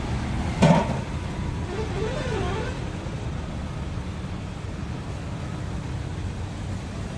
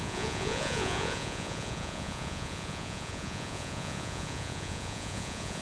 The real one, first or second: first